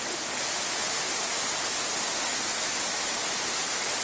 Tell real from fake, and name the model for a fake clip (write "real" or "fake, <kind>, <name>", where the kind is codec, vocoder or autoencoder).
real